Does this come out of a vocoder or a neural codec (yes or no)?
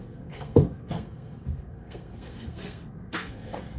yes